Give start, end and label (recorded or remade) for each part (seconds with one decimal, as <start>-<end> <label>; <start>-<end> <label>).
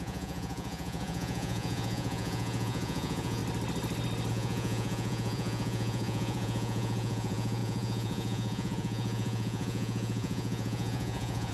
0.0-3.4 remade; 3.4-4.3 recorded; 4.3-11.5 remade